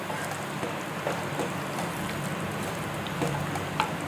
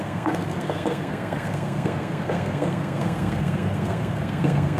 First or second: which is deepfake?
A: second